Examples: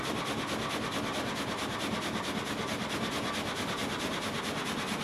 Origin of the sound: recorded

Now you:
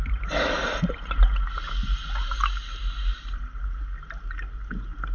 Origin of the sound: recorded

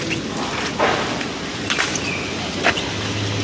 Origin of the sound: recorded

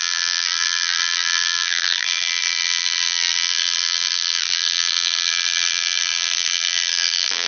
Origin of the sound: remade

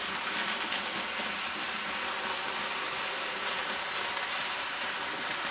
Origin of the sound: recorded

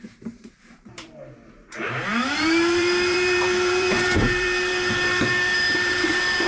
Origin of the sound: remade